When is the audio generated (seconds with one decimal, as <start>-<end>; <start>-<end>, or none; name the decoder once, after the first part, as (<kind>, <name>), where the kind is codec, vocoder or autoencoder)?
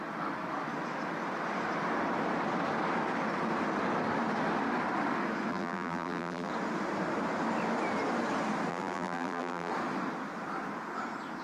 5.5-6.5 (vocoder, BigVGAN v2); 8.7-9.7